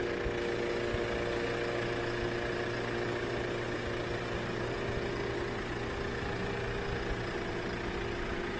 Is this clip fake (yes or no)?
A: no